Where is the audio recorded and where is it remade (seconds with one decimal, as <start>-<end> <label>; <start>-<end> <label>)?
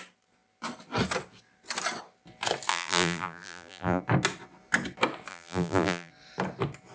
0.0-2.7 recorded; 2.7-4.0 remade; 4.0-5.3 recorded; 5.3-6.1 remade; 6.1-6.9 recorded